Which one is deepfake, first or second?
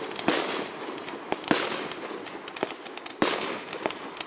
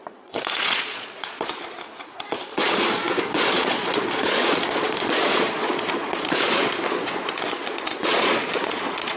second